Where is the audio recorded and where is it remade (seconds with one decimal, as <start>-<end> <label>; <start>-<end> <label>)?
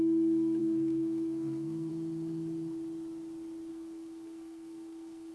0.0-0.6 recorded; 0.6-1.9 remade; 1.9-3.7 recorded; 3.7-5.3 remade